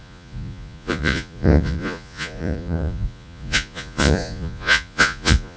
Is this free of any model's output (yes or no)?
no